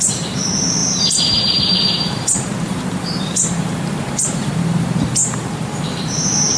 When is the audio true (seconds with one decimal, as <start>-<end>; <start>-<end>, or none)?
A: none

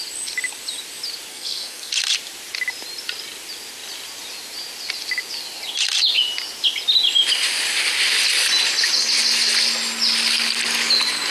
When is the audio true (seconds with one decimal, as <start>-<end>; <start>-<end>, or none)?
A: 0.0-1.3; 1.9-11.3